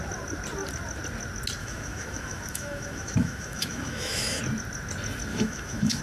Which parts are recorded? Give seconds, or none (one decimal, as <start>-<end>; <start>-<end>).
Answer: 0.0-1.6; 4.4-5.3